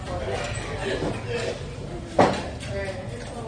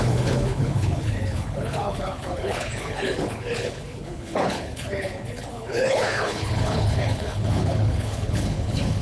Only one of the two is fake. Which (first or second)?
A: second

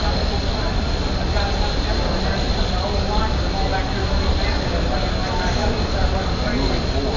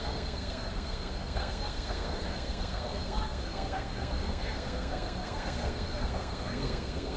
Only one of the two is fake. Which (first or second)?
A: second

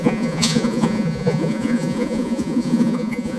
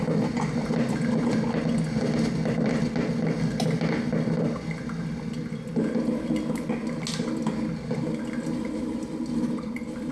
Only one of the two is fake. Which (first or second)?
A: first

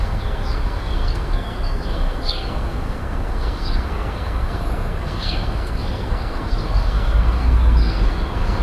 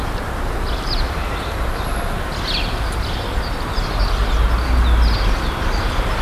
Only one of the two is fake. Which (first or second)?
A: first